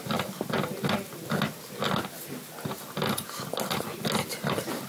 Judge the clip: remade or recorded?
recorded